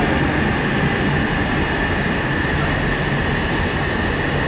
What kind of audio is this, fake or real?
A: real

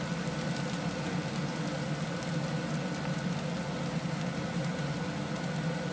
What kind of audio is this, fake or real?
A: real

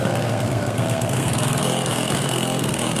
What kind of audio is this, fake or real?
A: fake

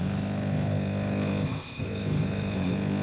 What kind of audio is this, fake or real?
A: fake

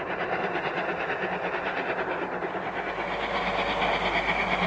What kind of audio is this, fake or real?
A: real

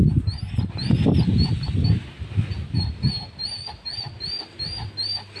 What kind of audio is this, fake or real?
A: real